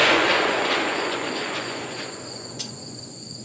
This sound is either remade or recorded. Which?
remade